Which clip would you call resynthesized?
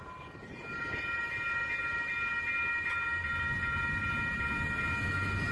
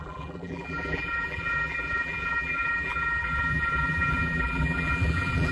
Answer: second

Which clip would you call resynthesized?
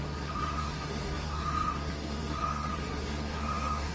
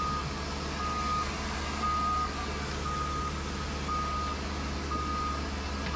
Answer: first